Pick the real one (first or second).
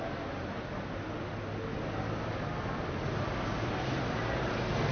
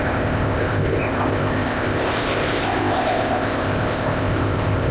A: first